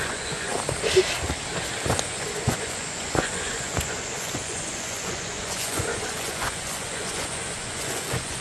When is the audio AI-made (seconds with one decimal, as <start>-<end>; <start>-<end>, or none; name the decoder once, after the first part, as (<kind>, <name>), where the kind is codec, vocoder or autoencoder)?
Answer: 0.0-0.5 (vocoder, Vocos); 1.9-8.4